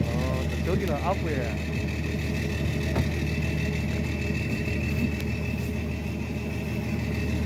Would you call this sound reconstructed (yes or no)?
no